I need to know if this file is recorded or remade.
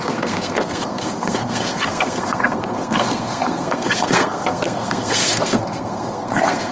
remade